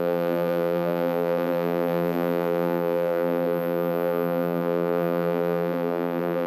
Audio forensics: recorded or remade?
remade